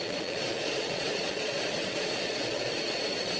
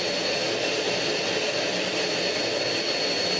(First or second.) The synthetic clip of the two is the first